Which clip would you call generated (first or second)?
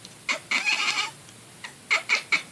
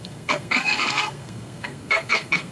second